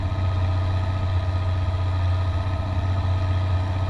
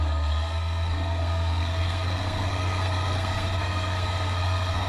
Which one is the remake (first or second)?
second